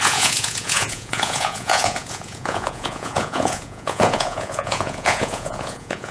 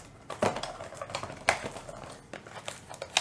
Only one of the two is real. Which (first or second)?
second